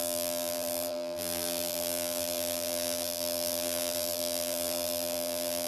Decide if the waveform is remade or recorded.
remade